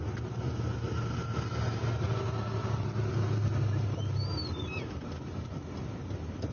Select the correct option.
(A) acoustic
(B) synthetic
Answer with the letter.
A